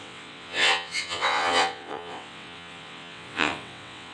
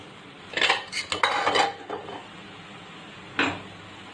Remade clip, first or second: first